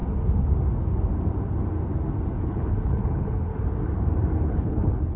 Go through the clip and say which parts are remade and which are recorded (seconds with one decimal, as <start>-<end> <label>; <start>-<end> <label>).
0.0-2.4 recorded; 2.4-3.5 remade; 3.5-4.4 recorded; 4.4-5.2 remade